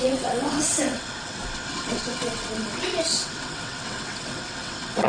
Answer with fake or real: fake